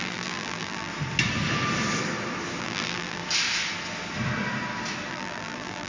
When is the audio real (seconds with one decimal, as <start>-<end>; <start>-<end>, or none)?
0.9-2.6; 3.2-5.1